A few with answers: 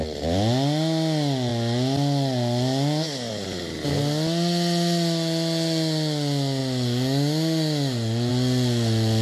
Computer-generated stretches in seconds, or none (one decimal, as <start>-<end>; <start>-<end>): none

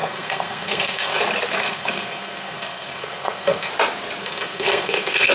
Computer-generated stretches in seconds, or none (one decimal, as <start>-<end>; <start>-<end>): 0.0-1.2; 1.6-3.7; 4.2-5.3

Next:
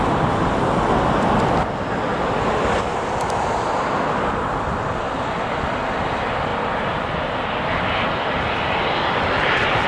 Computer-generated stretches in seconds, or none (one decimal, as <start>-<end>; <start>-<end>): none